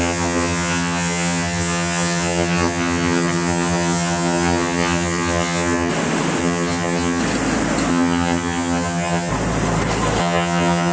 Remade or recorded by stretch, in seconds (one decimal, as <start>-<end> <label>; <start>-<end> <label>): 0.0-5.9 remade; 5.9-6.4 recorded; 6.4-7.2 remade; 7.2-7.9 recorded; 7.9-9.3 remade; 9.3-10.2 recorded; 10.2-10.9 remade